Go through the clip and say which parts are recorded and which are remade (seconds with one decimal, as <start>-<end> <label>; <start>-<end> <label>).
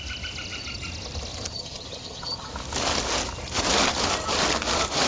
0.0-1.5 recorded; 1.5-2.5 remade; 2.5-5.1 recorded